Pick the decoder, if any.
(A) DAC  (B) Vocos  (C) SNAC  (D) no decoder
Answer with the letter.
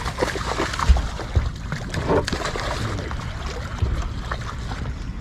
D